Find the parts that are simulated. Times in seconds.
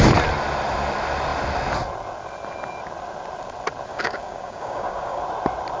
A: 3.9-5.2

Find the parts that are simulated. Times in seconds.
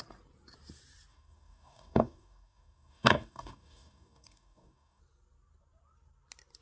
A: 1.1-5.0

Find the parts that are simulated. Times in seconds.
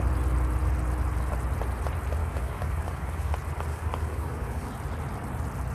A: 2.2-3.3; 3.7-4.7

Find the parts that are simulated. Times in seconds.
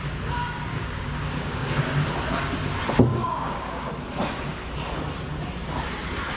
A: 0.7-1.8; 3.1-3.9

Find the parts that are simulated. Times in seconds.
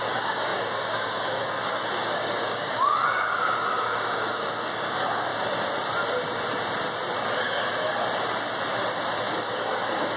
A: 0.0-5.3; 9.3-10.2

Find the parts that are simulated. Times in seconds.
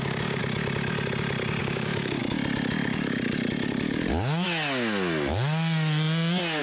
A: 0.0-0.4; 1.6-2.2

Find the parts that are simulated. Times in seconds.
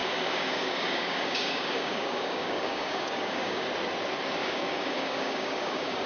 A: 0.0-3.7; 4.4-6.1